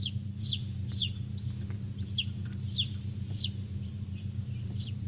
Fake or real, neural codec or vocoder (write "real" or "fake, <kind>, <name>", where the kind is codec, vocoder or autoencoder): fake, vocoder, BigVGAN v2